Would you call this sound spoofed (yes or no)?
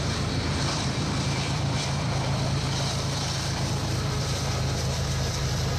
yes